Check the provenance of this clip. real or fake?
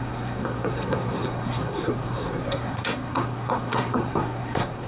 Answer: fake